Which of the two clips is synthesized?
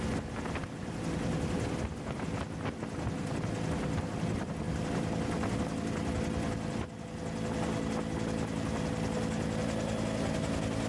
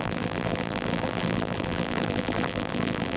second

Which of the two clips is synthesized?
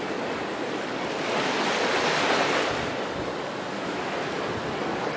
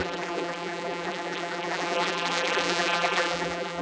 second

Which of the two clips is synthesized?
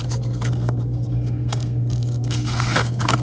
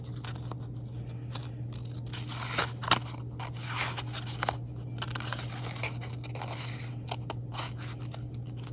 first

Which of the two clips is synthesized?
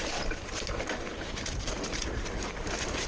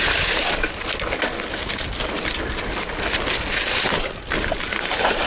first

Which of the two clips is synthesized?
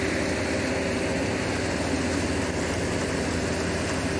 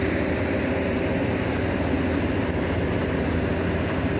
second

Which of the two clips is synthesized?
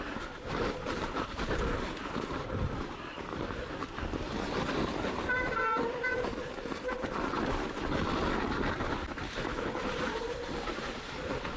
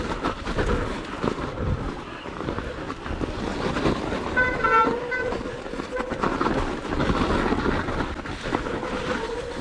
first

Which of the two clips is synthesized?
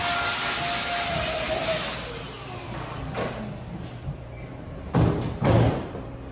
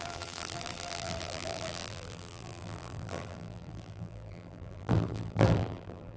second